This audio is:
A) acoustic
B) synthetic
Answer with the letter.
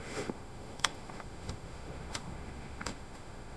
B